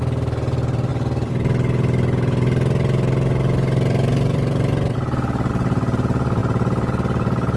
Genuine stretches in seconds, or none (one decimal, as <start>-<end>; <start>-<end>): 0.0-7.6